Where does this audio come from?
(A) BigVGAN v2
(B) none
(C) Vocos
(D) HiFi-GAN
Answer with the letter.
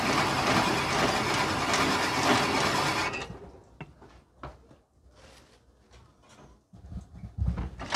B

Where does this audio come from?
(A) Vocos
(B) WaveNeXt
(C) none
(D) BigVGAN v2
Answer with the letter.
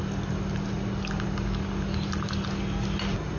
C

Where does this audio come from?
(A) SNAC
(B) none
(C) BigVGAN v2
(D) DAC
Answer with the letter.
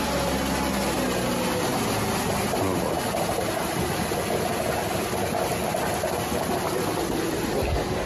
B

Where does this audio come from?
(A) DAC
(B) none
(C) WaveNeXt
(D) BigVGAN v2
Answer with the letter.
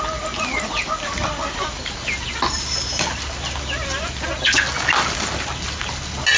B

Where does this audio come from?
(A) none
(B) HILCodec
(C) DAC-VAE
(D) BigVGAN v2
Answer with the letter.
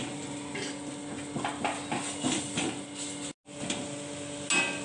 A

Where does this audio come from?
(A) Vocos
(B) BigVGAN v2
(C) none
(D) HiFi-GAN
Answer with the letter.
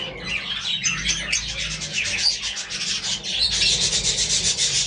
C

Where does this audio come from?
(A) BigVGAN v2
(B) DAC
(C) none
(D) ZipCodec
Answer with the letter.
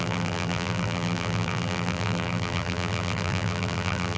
A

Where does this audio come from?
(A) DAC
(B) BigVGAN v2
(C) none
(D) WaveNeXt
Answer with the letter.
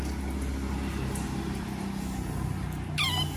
C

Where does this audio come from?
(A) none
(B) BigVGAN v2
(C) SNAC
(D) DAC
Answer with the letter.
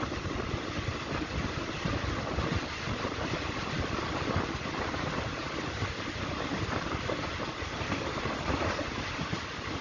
A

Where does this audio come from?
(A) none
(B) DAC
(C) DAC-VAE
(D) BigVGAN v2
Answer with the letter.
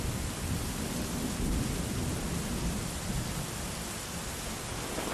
D